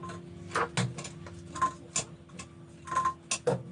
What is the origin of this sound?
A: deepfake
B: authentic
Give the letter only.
B